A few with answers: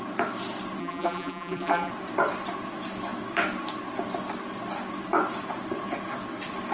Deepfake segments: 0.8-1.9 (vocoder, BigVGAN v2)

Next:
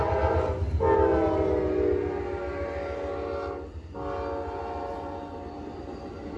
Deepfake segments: none

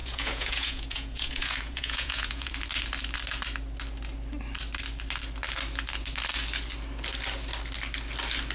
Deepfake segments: 0.0-2.5 (vocoder, Vocos)

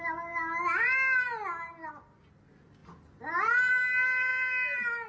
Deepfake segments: none

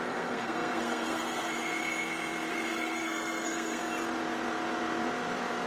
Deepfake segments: 0.0-1.8 (codec, SNAC); 2.5-3.8

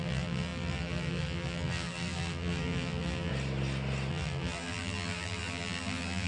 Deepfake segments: 0.0-3.3 (vocoder, BigVGAN v2); 4.1-6.3